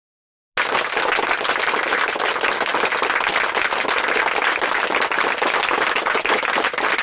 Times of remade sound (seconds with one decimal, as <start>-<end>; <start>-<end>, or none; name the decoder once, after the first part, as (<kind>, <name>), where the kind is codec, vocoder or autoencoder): none